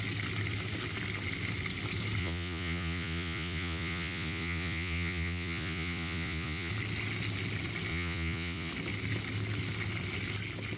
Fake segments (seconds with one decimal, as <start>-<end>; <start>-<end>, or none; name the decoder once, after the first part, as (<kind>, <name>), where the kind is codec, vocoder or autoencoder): 2.2-6.7 (vocoder, Vocos); 7.9-8.7